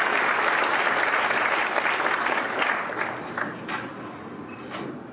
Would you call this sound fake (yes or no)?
no